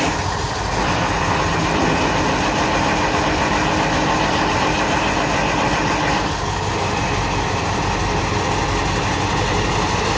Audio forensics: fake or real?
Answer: real